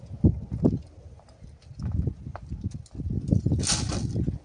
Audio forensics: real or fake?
real